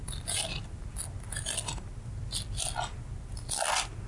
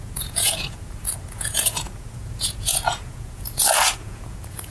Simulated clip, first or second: second